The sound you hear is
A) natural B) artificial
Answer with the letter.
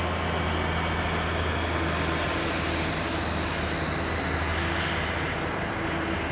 A